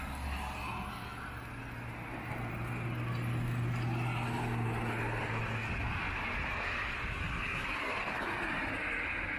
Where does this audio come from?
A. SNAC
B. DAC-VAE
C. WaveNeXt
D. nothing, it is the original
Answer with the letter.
D